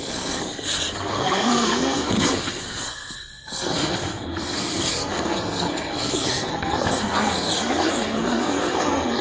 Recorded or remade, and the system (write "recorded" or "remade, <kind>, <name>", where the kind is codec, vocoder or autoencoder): remade, codec, SNAC